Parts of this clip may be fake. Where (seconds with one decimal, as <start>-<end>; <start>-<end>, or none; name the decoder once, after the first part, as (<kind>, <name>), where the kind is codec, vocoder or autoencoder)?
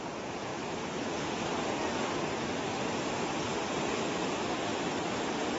0.5-1.1 (autoencoder, DAC-VAE)